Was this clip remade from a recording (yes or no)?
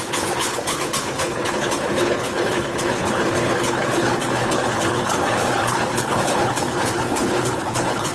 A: yes